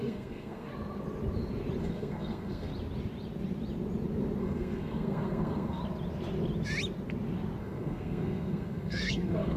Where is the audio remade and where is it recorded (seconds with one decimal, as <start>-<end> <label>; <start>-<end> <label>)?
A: 0.0-0.7 remade; 0.7-1.8 recorded; 1.8-2.7 remade; 2.7-4.4 recorded; 4.4-5.8 remade; 5.8-7.6 recorded; 7.6-9.6 remade